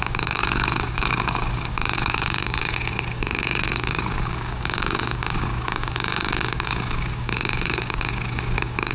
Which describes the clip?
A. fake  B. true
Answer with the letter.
A